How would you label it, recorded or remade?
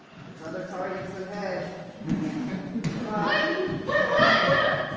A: recorded